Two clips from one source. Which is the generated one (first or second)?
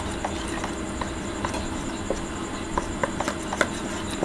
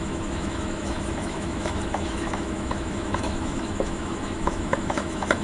second